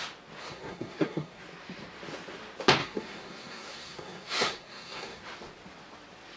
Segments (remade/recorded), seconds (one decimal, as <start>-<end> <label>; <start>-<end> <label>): 0.0-0.4 recorded; 0.4-1.4 remade; 1.4-2.8 recorded; 2.8-5.2 remade; 5.2-6.4 recorded